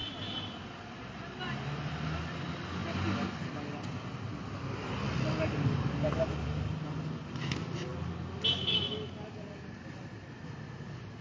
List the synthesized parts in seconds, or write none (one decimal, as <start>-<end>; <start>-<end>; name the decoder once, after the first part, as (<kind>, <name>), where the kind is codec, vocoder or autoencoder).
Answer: none